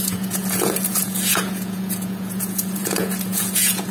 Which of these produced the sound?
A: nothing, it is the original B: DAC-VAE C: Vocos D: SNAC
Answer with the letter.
C